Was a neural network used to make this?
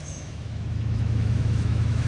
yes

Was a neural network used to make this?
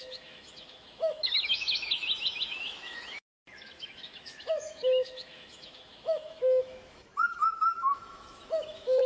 yes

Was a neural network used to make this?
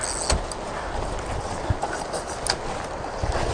no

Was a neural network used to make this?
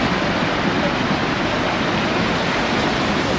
no